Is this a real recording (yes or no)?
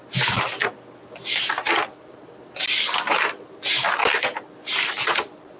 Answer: yes